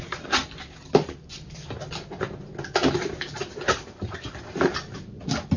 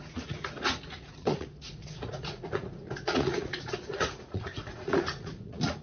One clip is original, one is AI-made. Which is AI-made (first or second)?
second